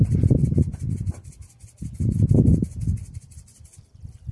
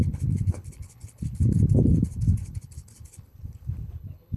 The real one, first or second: first